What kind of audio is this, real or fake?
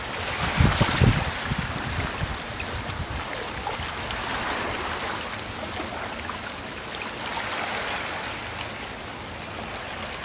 real